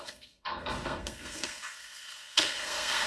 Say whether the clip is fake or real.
fake